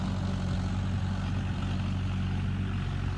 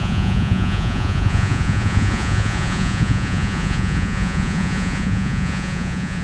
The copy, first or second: second